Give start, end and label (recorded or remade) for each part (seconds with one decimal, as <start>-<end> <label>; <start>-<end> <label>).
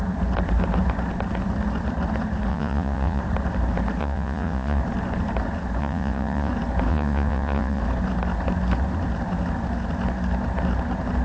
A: 0.0-2.5 recorded; 2.5-3.2 remade; 3.2-4.0 recorded; 4.0-4.8 remade; 4.8-5.8 recorded; 5.8-6.5 remade; 6.5-6.9 recorded; 6.9-7.8 remade; 7.8-11.2 recorded